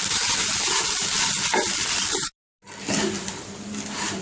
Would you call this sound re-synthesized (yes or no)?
no